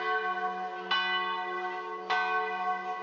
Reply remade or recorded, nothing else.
recorded